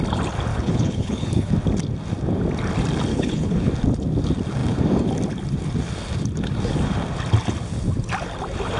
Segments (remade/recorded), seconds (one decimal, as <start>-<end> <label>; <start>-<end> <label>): 0.0-0.5 recorded; 0.5-1.5 remade; 1.5-3.1 recorded; 3.1-3.7 remade; 3.7-8.8 recorded